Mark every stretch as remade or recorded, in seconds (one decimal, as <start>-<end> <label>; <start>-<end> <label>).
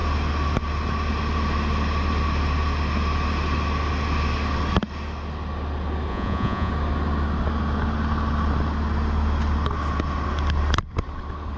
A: 0.0-6.1 recorded; 6.1-6.7 remade; 6.7-11.6 recorded